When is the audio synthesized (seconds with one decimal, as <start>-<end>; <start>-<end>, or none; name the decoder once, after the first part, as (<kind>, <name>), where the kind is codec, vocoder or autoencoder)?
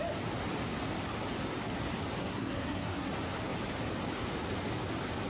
2.2-3.1 (codec, SNAC)